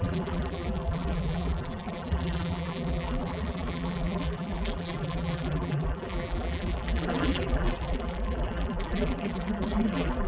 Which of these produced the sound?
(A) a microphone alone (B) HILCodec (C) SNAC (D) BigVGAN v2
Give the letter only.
D